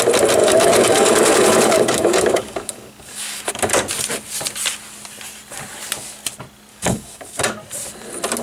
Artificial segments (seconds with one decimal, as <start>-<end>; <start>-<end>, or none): 0.4-3.5; 6.7-7.4

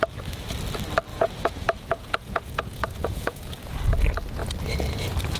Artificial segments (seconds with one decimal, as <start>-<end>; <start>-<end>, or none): 1.1-3.7

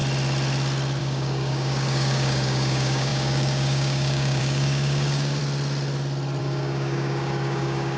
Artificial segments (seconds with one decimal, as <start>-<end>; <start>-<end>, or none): 1.0-5.4; 6.4-8.0

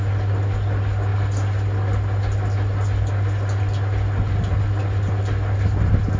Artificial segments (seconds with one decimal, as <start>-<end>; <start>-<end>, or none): none

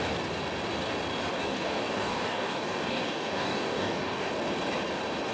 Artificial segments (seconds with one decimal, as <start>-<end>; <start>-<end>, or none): 1.3-4.3